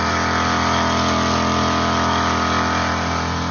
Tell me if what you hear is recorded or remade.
recorded